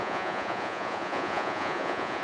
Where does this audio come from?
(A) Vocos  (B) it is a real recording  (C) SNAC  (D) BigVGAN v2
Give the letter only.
A